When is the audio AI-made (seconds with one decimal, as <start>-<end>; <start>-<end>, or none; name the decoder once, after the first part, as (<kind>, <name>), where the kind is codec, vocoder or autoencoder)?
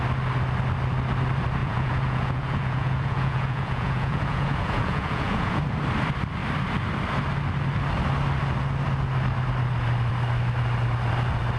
1.6-5.6 (vocoder, Vocos)